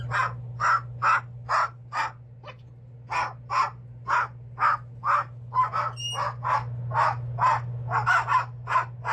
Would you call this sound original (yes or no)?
yes